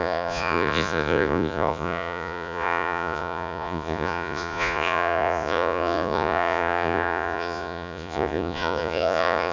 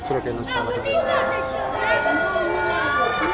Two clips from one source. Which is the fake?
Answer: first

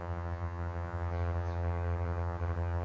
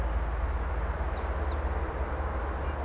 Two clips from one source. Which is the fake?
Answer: first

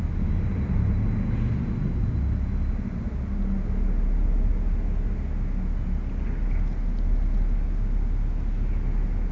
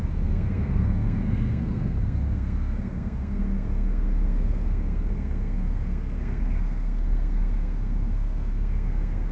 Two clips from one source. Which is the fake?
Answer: second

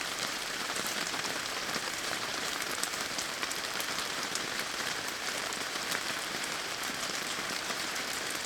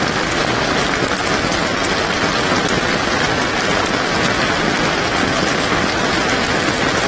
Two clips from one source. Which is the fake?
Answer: first